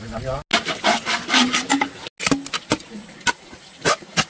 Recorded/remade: recorded